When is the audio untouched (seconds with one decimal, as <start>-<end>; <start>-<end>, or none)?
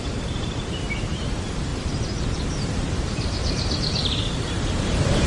none